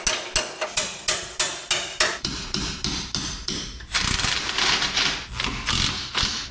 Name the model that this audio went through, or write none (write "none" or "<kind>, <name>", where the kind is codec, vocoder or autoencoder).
none